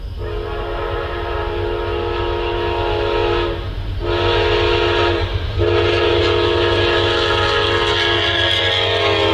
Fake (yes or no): no